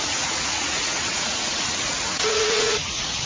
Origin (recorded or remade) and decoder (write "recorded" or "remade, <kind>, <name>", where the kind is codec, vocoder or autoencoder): remade, vocoder, Vocos